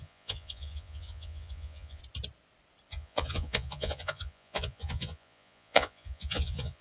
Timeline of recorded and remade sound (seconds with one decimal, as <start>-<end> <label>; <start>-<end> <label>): 0.0-2.0 remade; 2.0-2.9 recorded; 2.9-6.8 remade